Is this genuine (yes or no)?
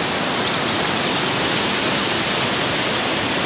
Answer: no